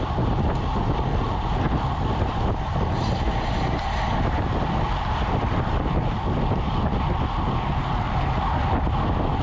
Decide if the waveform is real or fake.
real